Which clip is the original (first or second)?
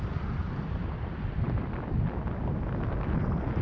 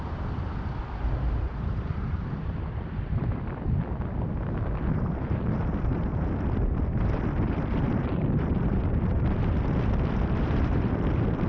first